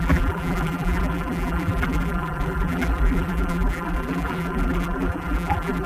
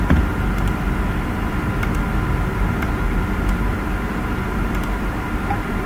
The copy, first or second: first